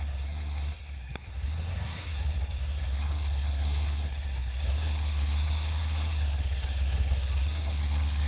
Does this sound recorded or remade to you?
remade